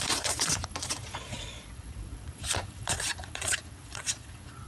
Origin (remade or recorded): remade